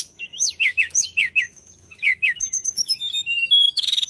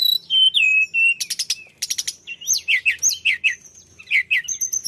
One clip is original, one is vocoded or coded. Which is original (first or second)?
second